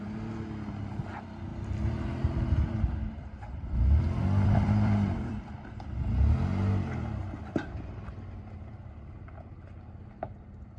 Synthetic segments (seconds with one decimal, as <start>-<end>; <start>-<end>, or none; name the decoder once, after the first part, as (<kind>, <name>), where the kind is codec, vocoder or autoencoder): 1.5-5.9 (vocoder, BigVGAN v2); 7.2-9.0